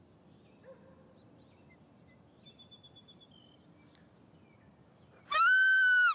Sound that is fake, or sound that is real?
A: real